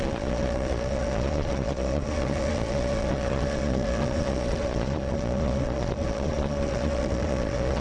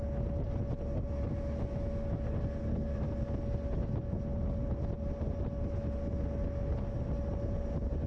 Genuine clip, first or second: second